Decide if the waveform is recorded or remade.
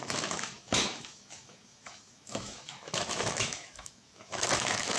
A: remade